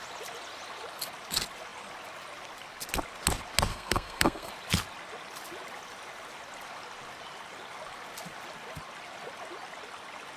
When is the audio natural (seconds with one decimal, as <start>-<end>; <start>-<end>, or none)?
0.0-3.7; 4.5-10.4